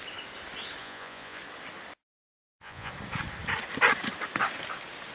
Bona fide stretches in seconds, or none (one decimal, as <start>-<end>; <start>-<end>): 0.0-0.8; 1.4-2.2; 2.9-5.1